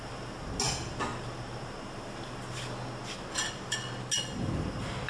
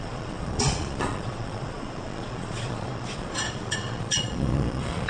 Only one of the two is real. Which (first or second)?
first